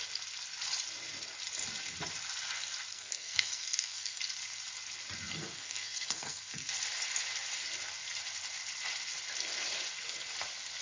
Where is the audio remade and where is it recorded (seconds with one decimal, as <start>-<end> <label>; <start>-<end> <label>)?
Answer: 0.0-2.9 recorded; 2.9-4.2 remade; 4.2-5.4 recorded; 5.4-6.7 remade; 6.7-10.8 recorded